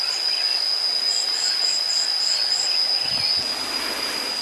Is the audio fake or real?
real